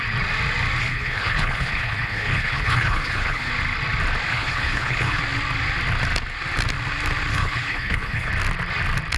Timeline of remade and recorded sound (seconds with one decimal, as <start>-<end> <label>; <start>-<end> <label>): 0.0-0.8 recorded; 0.8-3.5 remade; 3.5-4.3 recorded; 4.3-5.2 remade; 5.2-7.3 recorded; 7.3-8.3 remade; 8.3-9.2 recorded